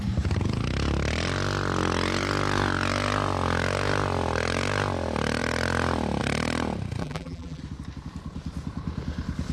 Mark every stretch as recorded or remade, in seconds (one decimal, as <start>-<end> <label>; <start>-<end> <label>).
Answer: 0.0-7.0 recorded; 7.0-7.6 remade; 7.6-9.5 recorded